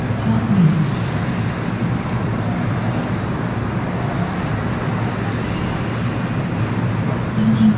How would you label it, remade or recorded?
recorded